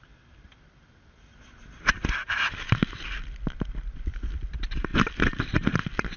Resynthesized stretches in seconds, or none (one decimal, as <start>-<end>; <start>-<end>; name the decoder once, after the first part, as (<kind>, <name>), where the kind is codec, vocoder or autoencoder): 0.0-2.2 (vocoder, BigVGAN v2); 3.1-6.2